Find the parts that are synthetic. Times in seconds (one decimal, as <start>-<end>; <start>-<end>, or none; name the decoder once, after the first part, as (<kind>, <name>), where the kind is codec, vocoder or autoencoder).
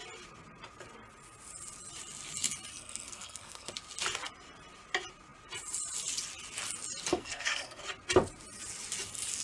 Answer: 2.7-3.7 (codec, SNAC); 7.1-7.9